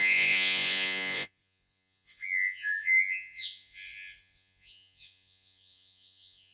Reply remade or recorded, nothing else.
remade